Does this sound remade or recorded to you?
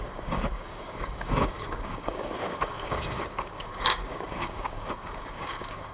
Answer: remade